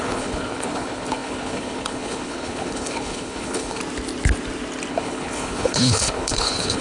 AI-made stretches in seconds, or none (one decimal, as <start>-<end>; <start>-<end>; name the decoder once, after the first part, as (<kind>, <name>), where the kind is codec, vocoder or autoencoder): 0.0-3.8 (codec, HILCodec); 4.9-6.8